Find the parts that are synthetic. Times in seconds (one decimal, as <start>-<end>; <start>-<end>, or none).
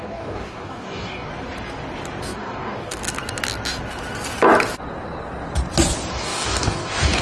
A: 0.0-1.3; 2.2-3.0; 6.1-7.2